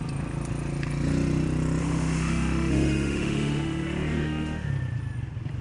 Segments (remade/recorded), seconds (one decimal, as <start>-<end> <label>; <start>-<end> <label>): 0.0-1.8 recorded; 1.8-4.7 remade; 4.7-5.6 recorded